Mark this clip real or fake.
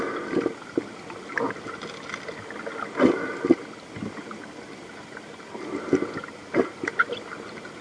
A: real